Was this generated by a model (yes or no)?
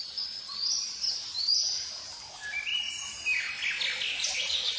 no